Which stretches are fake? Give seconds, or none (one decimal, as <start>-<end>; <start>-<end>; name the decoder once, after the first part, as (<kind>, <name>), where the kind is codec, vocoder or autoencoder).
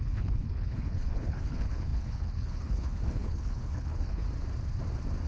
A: 0.0-4.2 (codec, HILCodec)